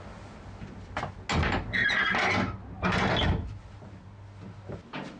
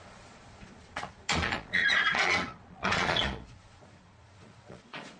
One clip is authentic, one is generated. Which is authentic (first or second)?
first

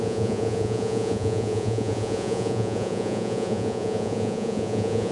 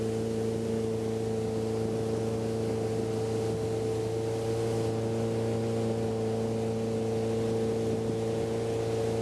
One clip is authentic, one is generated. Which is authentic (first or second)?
second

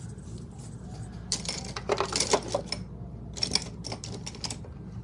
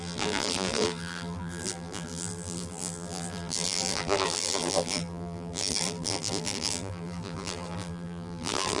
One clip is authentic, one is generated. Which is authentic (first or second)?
first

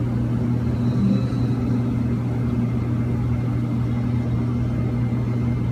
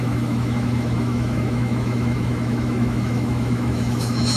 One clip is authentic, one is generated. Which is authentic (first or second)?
first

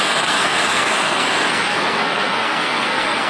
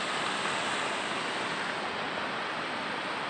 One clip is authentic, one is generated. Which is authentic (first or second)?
second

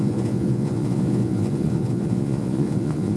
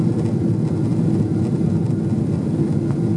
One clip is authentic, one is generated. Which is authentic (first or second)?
second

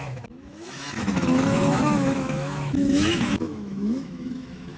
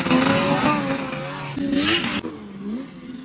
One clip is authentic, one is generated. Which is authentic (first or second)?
second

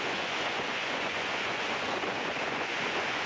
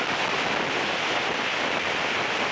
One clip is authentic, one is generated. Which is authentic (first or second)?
second